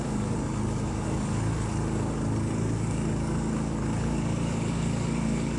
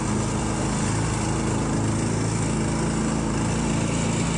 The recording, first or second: second